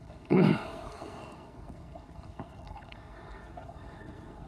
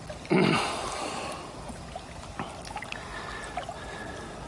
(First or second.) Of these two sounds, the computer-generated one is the first